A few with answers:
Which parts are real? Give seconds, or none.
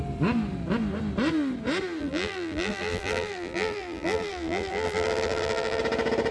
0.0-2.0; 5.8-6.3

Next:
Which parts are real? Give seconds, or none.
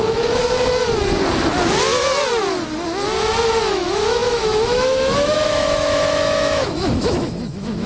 0.4-3.7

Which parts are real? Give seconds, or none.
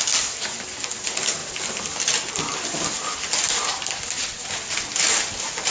0.0-1.4; 3.2-4.3; 4.9-5.7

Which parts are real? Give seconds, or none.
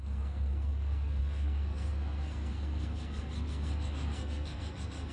none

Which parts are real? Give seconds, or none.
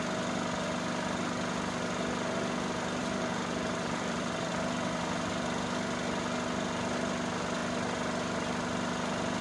0.0-3.0; 4.5-9.4